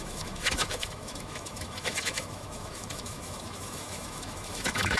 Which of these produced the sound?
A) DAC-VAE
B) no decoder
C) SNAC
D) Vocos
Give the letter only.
A